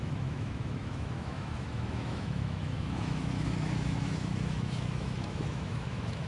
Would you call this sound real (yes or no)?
no